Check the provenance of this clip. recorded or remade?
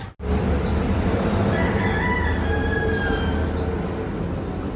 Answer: recorded